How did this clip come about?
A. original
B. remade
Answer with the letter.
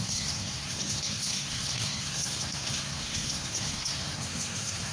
B